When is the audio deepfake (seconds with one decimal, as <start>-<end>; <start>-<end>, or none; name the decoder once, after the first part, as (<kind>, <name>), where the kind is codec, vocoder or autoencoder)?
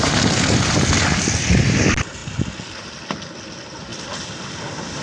none